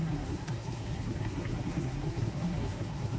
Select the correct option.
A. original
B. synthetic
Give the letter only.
B